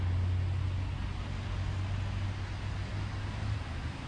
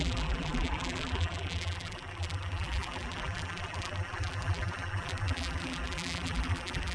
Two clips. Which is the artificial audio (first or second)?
second